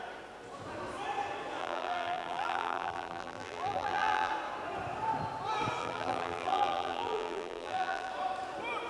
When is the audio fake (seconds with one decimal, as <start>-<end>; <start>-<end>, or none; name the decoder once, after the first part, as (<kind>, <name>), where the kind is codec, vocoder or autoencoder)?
1.6-4.3 (vocoder, BigVGAN v2); 5.8-8.1